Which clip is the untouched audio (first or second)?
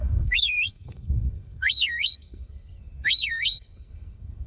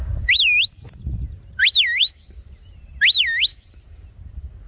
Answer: second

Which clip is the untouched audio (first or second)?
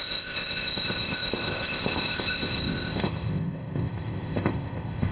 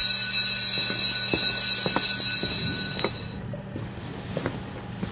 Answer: second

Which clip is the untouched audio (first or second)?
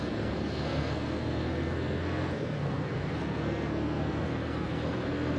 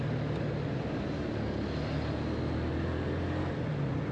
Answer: second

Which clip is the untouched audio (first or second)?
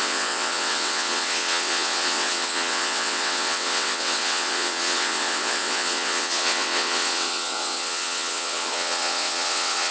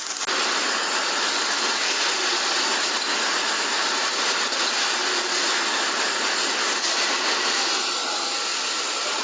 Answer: second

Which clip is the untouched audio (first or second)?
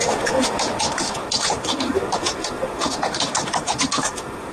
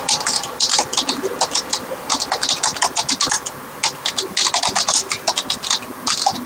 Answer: second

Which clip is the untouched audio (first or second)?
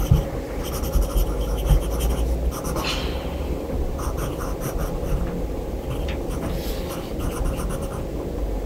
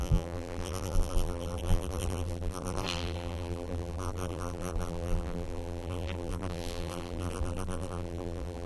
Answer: first